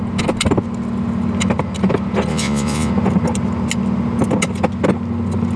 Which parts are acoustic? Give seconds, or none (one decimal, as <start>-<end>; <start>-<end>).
0.0-2.3; 2.9-5.6